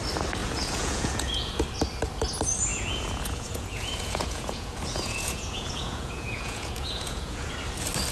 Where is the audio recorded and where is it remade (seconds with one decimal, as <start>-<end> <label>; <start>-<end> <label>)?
0.0-0.4 recorded; 0.4-1.6 remade; 1.6-2.7 recorded; 2.7-7.5 remade; 7.5-8.1 recorded